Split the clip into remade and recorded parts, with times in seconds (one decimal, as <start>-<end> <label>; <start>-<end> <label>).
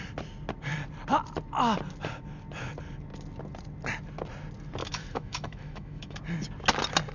0.0-4.8 recorded; 4.8-6.2 remade; 6.2-7.1 recorded